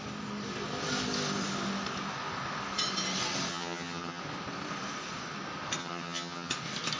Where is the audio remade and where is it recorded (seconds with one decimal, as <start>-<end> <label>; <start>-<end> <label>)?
0.0-3.5 recorded; 3.5-4.2 remade; 4.2-5.8 recorded; 5.8-6.5 remade; 6.5-7.0 recorded